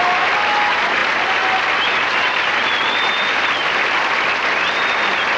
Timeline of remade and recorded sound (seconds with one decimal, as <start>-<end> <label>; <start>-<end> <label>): 0.0-5.4 recorded